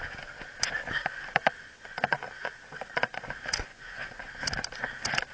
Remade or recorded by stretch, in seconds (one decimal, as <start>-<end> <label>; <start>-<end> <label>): 0.0-1.0 recorded; 1.0-4.2 remade; 4.2-5.3 recorded

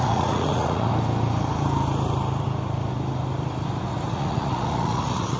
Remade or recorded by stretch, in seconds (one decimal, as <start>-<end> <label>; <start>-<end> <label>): 0.0-0.9 remade; 0.9-4.1 recorded; 4.1-5.4 remade

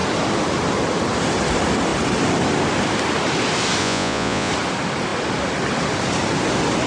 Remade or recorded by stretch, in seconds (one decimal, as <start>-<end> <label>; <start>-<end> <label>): 0.0-3.8 recorded; 3.8-4.5 remade; 4.5-6.9 recorded